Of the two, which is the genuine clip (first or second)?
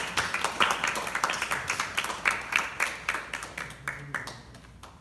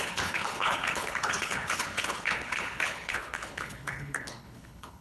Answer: first